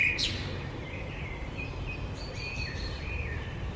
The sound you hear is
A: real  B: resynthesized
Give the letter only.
B